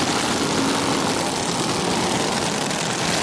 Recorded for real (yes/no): yes